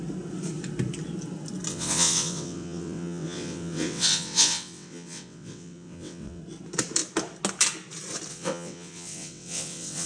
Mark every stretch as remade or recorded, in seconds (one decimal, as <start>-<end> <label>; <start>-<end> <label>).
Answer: 0.0-1.7 recorded; 1.7-6.4 remade; 6.4-8.3 recorded; 8.3-10.1 remade